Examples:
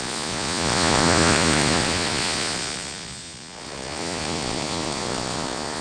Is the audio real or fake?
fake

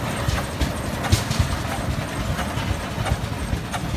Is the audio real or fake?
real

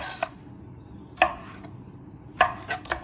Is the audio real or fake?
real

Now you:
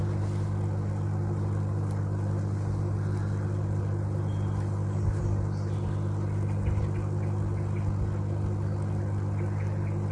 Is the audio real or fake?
real